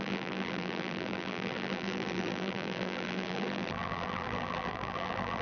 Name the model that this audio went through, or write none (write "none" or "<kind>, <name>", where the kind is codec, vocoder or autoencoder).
vocoder, BigVGAN v2